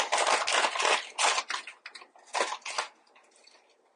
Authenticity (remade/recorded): recorded